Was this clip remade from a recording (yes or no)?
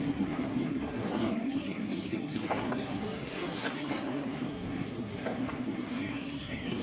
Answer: yes